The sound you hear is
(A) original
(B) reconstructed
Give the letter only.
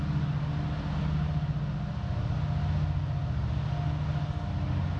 A